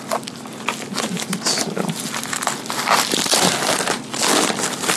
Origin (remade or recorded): recorded